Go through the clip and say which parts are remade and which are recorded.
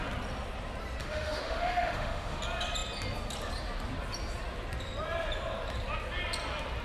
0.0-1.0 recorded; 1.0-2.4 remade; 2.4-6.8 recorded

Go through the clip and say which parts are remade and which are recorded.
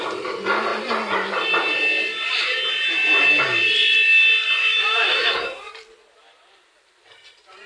0.0-4.6 recorded; 4.6-5.3 remade; 5.3-7.7 recorded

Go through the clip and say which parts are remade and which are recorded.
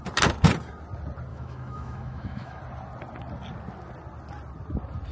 0.0-1.3 recorded; 1.3-2.6 remade; 2.6-5.1 recorded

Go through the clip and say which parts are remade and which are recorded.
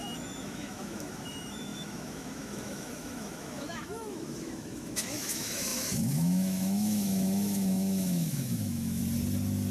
0.0-9.0 remade; 9.0-9.7 recorded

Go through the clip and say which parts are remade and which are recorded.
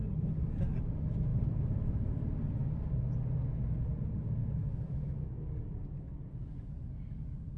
0.0-4.4 recorded; 4.4-5.5 remade; 5.5-7.6 recorded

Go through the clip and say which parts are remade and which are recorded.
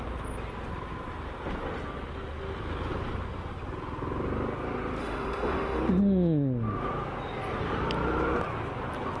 0.0-5.0 recorded; 5.0-5.8 remade; 5.8-9.2 recorded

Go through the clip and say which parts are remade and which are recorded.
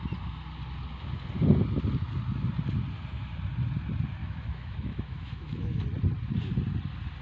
0.0-4.2 recorded; 4.2-5.8 remade; 5.8-7.2 recorded